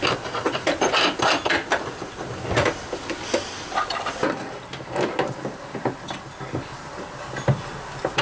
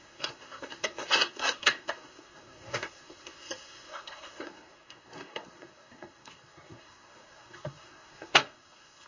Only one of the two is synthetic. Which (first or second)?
second